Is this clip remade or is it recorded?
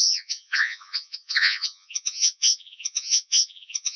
remade